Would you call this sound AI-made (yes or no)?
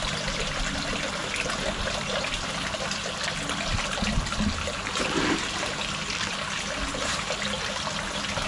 no